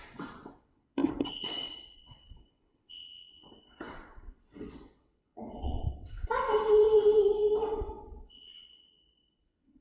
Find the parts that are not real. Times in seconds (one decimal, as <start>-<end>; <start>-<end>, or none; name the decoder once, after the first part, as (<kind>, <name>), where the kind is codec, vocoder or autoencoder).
0.0-9.8 (vocoder, WaveNeXt)